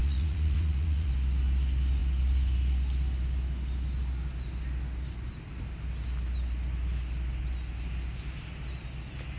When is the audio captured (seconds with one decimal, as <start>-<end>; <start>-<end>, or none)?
1.1-9.4